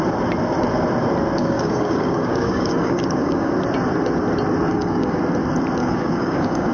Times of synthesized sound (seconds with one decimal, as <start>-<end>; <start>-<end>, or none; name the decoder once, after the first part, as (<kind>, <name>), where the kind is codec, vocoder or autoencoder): 1.4-3.5 (codec, DAC); 4.7-5.2; 5.8-6.7